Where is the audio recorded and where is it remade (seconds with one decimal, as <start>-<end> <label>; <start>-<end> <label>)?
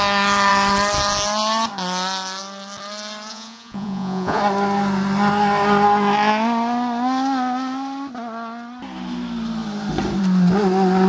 0.0-3.3 recorded; 3.3-4.4 remade; 4.4-11.1 recorded